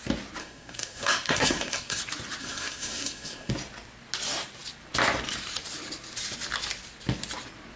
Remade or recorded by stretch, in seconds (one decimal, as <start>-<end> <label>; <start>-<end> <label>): 0.0-0.4 recorded; 0.4-2.0 remade; 2.0-2.4 recorded; 2.4-3.5 remade; 3.5-7.8 recorded